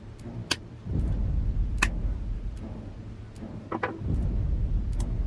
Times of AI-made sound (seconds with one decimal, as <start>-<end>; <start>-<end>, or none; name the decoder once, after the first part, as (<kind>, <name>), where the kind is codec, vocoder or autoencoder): none